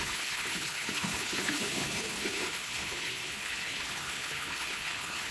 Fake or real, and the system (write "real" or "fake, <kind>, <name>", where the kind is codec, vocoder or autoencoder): fake, codec, HILCodec